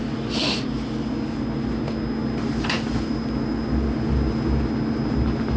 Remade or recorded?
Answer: recorded